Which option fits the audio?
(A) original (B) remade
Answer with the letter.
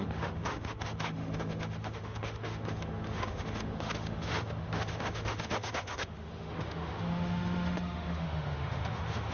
B